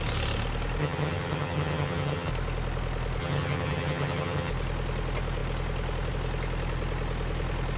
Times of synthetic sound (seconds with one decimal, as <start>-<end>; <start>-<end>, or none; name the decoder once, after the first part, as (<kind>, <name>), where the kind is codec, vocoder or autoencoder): 0.8-2.3 (vocoder, HiFi-GAN); 3.2-4.5